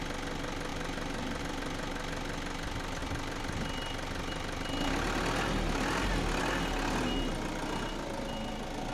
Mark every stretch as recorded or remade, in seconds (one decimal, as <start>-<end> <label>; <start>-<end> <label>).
0.0-0.7 recorded; 0.7-1.4 remade; 1.4-8.9 recorded